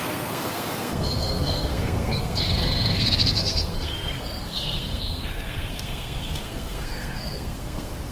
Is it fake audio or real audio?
fake